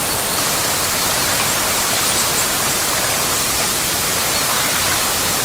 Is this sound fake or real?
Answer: fake